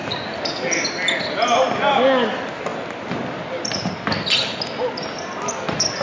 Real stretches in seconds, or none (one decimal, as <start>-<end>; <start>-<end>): 0.0-6.0